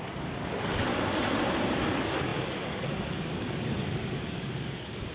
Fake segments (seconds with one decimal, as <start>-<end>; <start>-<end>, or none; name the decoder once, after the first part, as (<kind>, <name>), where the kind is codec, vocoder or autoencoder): 0.0-0.9 (codec, DAC); 1.7-5.1